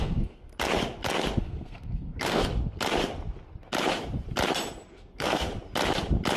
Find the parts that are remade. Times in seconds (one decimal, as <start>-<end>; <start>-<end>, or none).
0.0-0.5; 1.4-2.4; 4.9-5.5